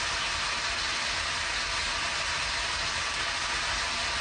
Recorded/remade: recorded